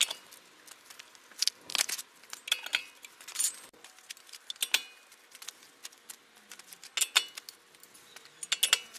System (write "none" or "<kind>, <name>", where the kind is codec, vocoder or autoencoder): none